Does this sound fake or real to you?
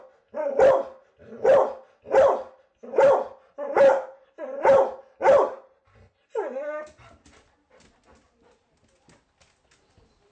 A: real